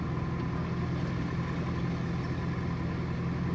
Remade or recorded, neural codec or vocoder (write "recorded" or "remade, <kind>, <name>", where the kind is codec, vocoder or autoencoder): recorded